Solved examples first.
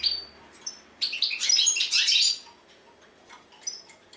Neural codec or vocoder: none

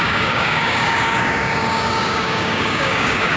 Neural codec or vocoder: codec, DAC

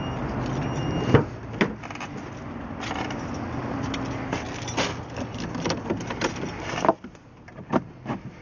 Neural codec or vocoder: none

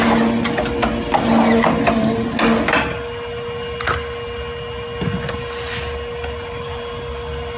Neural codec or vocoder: none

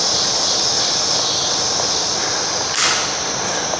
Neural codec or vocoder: none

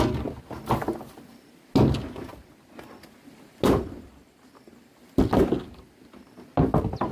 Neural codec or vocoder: none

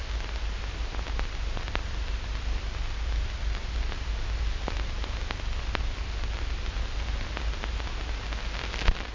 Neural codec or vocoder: none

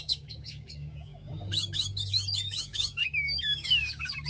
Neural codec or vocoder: codec, DAC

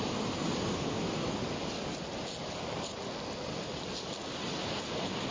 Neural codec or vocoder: none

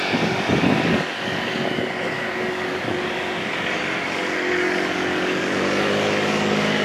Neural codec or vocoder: codec, DAC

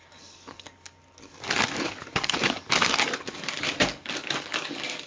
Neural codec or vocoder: codec, DAC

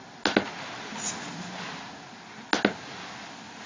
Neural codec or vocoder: none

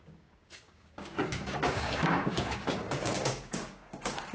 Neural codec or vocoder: codec, DAC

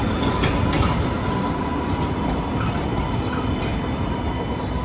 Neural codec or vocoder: none